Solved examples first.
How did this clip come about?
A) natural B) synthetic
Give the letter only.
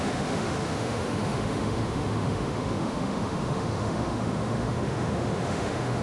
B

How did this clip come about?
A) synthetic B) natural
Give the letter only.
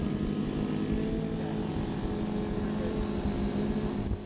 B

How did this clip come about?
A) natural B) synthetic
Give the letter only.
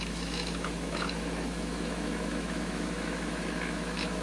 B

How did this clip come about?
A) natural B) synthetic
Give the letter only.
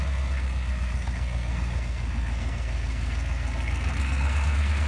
B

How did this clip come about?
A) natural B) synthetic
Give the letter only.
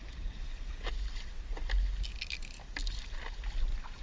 A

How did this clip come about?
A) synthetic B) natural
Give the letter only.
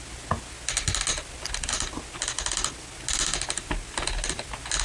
B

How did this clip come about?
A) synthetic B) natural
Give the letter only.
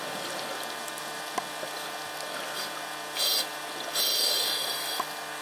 B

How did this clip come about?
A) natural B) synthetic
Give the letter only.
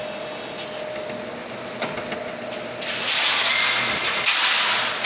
A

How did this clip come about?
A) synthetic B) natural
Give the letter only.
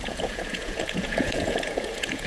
A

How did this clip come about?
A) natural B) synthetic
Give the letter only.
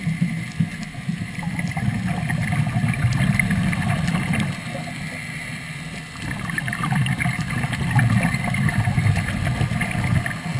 A